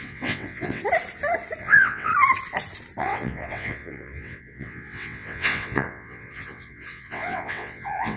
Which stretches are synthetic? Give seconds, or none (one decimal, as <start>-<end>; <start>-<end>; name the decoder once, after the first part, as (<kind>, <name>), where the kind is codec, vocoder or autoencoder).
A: 0.0-0.8 (vocoder, WaveNeXt); 1.6-2.1; 3.0-8.2